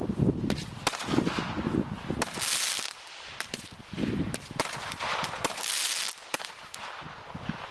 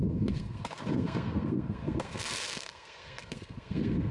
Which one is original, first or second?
first